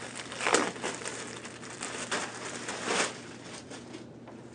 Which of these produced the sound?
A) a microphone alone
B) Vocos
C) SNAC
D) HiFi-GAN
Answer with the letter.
A